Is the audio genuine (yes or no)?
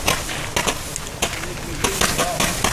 yes